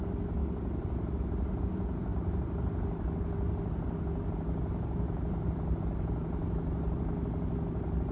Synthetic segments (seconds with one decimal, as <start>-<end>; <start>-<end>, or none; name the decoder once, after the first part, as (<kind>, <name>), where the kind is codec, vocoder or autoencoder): none